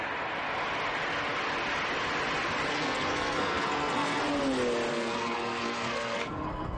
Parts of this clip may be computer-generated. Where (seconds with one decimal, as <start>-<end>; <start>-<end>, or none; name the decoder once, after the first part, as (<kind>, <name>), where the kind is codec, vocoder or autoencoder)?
2.7-4.2 (codec, SNAC); 4.9-6.8